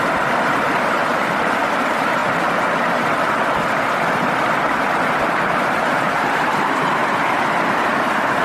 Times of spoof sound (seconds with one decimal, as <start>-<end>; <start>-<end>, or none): 0.0-2.2; 5.4-7.0; 7.8-8.4

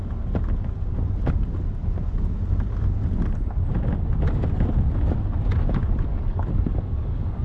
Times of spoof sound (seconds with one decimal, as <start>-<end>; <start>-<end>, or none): 6.1-7.4

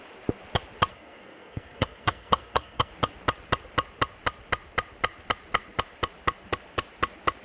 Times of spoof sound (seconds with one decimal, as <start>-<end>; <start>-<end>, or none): 0.9-2.9

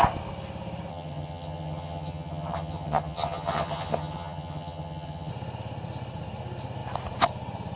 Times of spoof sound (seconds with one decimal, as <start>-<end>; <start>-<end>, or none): 0.9-5.3

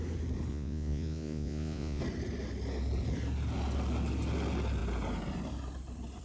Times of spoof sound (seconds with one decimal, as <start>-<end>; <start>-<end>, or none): 0.5-2.0

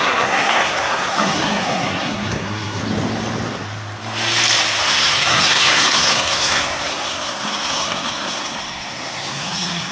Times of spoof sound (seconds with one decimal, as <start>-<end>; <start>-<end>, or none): 0.0-2.8; 4.8-9.9